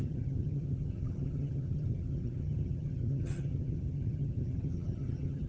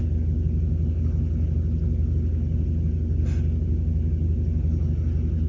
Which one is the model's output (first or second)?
first